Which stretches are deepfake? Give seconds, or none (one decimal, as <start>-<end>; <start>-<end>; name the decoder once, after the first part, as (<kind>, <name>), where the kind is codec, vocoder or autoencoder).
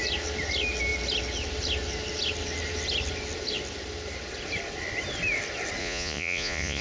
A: 5.8-6.8 (vocoder, Vocos)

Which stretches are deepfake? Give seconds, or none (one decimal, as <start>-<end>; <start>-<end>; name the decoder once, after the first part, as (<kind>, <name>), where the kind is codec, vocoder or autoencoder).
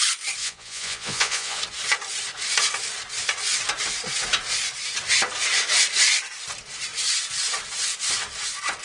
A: 0.4-1.6 (vocoder, Vocos)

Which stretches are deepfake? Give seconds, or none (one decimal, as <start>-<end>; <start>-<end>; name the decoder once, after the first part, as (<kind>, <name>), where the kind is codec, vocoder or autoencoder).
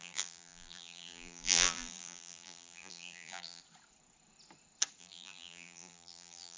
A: 0.0-3.6 (vocoder, BigVGAN v2); 5.0-6.6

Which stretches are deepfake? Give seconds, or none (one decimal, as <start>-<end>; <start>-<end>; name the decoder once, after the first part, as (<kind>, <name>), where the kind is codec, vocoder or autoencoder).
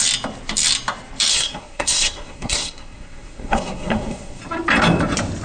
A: 1.3-4.4 (codec, SNAC)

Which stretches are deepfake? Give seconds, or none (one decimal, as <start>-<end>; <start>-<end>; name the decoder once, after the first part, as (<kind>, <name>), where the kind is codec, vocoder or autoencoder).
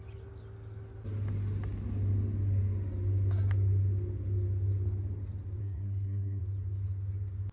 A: 5.6-6.4 (codec, SNAC)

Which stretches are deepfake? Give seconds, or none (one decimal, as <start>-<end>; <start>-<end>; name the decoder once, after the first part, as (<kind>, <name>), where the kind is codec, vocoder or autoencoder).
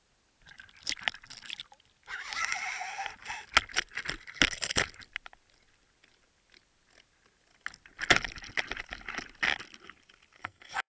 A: 10.4-10.9 (codec, SNAC)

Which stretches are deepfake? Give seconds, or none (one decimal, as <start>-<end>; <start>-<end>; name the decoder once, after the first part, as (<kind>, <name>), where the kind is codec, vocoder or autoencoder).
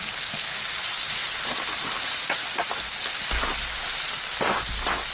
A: none